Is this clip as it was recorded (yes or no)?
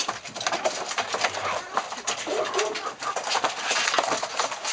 yes